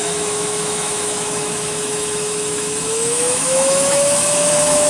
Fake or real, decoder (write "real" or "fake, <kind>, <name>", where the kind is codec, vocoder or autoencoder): fake, autoencoder, DAC-VAE